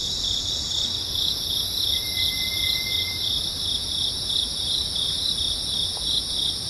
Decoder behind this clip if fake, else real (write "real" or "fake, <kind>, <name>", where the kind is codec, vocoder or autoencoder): real